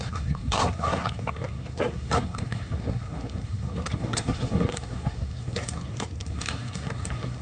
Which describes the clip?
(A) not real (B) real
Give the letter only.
A